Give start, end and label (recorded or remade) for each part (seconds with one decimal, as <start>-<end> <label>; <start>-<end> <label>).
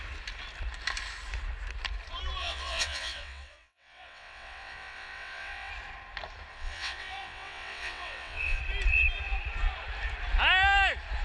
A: 0.0-2.4 recorded; 2.4-5.7 remade; 5.7-6.5 recorded; 6.5-8.6 remade; 8.6-11.2 recorded